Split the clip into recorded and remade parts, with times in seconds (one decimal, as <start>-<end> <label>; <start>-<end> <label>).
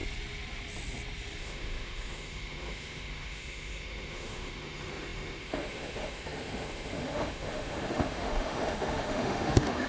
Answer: 0.0-1.4 recorded; 1.4-9.9 remade